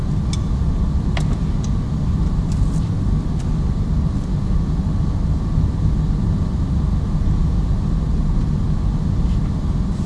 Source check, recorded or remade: recorded